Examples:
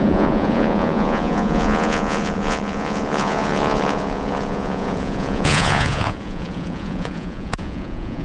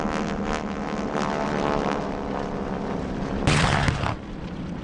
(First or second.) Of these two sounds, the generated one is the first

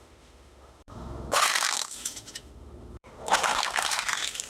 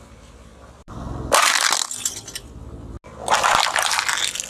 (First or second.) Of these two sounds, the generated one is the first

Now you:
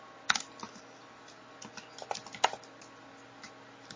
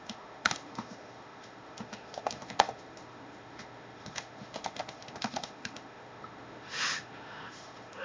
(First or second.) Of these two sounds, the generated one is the second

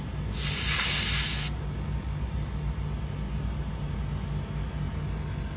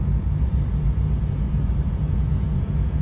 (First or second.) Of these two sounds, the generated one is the second